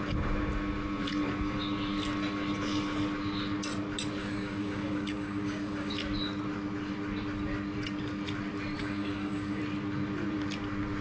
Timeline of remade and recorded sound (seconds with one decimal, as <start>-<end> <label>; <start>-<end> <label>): 0.0-4.2 recorded; 4.2-5.9 remade; 5.9-8.8 recorded; 8.8-9.6 remade; 9.6-11.0 recorded